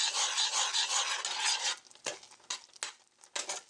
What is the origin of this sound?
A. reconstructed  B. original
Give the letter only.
B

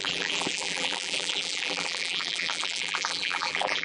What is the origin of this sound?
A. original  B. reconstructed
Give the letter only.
B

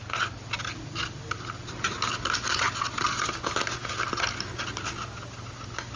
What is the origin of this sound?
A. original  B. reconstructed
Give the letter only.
A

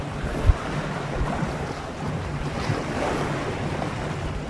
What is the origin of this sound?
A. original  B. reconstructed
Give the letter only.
A